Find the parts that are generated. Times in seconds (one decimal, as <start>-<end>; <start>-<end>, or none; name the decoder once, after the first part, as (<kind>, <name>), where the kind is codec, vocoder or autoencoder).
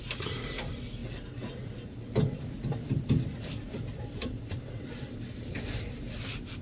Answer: none